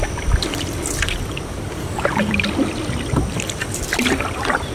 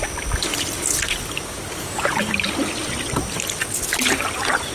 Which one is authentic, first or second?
second